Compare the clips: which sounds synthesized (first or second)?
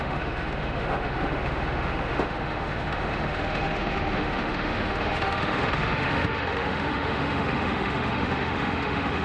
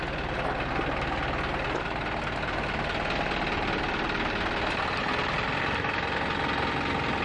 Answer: first